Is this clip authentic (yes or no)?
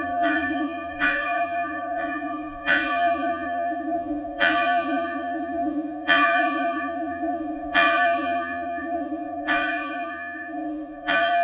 no